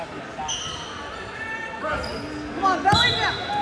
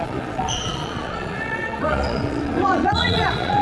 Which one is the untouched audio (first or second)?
first